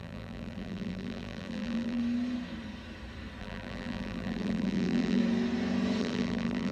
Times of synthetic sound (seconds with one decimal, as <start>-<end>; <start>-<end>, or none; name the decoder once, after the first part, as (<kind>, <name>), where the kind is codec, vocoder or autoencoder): 0.0-2.0 (vocoder, BigVGAN v2); 3.4-5.2; 6.0-6.7